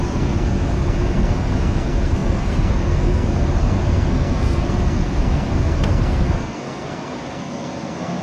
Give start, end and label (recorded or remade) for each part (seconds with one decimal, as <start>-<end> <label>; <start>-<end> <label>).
0.0-8.2 remade